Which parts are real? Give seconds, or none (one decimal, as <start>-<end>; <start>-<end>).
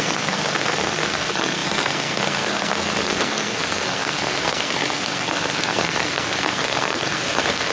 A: none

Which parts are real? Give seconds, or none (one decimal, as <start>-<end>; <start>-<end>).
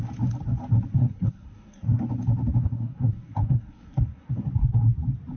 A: 0.0-1.0; 2.1-2.6; 4.5-5.4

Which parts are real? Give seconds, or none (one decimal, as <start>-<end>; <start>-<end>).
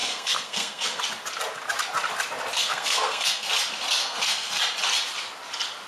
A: 1.0-2.6; 3.5-4.0; 4.6-5.9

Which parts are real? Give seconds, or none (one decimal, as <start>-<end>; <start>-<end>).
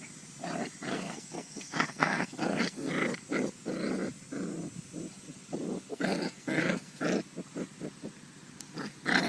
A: 0.0-0.9; 2.9-5.9; 7.0-9.3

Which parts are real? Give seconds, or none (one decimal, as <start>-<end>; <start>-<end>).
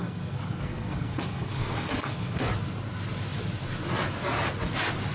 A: 2.4-5.1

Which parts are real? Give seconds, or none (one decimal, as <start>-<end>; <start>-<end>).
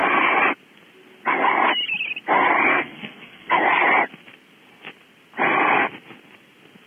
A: 0.0-2.7; 3.5-6.9